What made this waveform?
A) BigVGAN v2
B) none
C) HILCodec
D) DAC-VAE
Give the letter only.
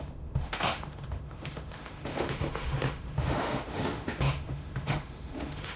D